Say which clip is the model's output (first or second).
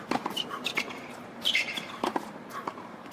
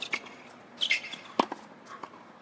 first